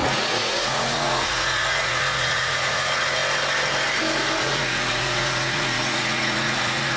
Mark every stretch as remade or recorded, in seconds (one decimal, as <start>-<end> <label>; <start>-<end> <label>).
0.0-3.2 remade; 3.2-4.4 recorded; 4.4-7.0 remade